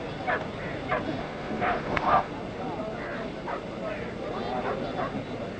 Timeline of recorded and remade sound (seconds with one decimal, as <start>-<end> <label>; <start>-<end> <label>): 0.0-1.2 recorded; 1.2-2.3 remade; 2.3-5.6 recorded